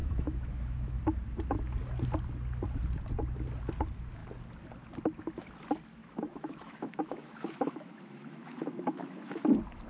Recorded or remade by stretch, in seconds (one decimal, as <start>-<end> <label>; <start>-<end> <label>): 0.0-1.0 remade; 1.0-6.0 recorded; 6.0-9.4 remade; 9.4-9.9 recorded